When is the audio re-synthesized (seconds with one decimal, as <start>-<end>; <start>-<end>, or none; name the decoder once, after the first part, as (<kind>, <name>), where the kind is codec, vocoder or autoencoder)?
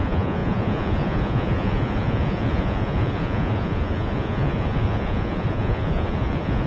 0.0-6.7 (vocoder, Vocos)